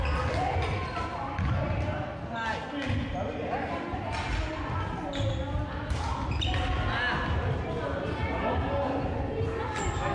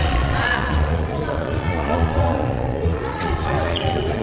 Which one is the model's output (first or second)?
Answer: second